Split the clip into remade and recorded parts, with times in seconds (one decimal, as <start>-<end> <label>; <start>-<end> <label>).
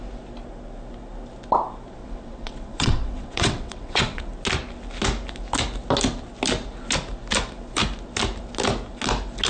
0.0-2.0 recorded; 2.0-4.3 remade; 4.3-9.5 recorded